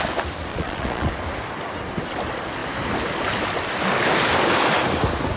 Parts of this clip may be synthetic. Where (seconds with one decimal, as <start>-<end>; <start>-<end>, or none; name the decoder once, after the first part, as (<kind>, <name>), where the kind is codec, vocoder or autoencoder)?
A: 0.5-1.1 (vocoder, Vocos)